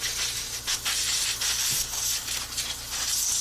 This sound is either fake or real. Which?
real